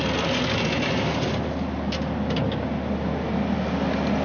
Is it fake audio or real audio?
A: real